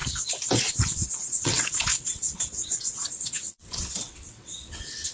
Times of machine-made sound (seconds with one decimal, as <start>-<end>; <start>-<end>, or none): 0.7-5.1